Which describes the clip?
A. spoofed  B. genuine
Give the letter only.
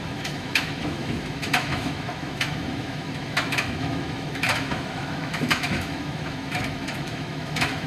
A